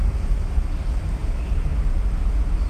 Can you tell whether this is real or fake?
real